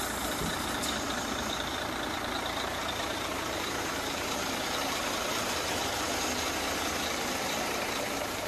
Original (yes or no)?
no